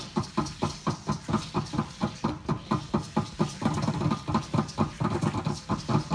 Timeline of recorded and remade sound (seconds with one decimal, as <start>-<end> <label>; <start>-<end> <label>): 0.0-6.1 recorded